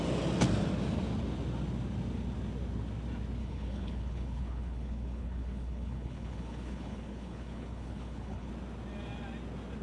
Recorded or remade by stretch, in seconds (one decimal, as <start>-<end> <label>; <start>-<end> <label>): 0.0-3.4 recorded; 3.4-8.5 remade; 8.5-9.8 recorded